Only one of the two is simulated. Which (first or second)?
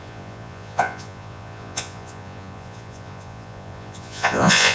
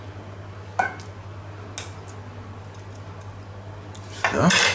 first